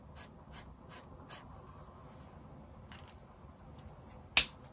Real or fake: real